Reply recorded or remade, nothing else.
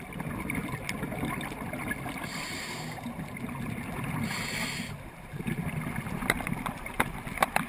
recorded